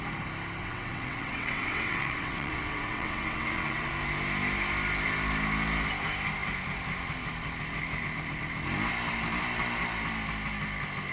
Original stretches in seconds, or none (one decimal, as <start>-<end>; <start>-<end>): 0.0-0.6; 3.9-11.1